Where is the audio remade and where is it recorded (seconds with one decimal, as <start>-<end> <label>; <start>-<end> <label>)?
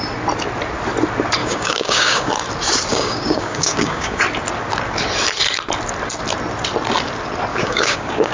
0.0-1.4 recorded; 1.4-2.3 remade; 2.3-2.9 recorded; 2.9-4.2 remade; 4.2-7.5 recorded; 7.5-8.3 remade